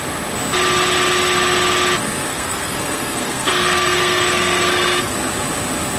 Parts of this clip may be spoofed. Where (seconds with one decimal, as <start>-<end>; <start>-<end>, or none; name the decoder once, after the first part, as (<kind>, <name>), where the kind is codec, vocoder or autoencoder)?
2.3-5.1 (codec, SNAC)